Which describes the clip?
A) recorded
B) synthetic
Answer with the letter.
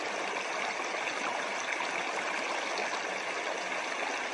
A